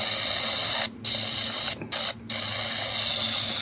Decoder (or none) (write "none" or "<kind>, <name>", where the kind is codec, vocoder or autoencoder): none